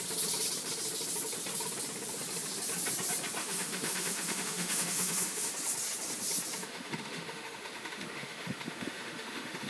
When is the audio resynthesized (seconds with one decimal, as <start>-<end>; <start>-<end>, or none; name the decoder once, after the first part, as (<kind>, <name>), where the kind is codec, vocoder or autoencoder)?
3.4-5.5 (autoencoder, DAC-VAE); 6.6-9.7